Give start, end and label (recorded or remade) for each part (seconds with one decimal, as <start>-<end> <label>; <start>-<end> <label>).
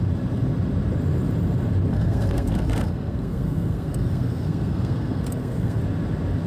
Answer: 0.0-1.9 recorded; 1.9-5.8 remade; 5.8-6.5 recorded